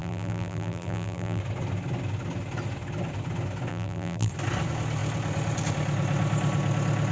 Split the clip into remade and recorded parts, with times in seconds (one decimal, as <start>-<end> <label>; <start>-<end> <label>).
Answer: 0.0-1.4 remade; 1.4-3.7 recorded; 3.7-4.3 remade; 4.3-7.1 recorded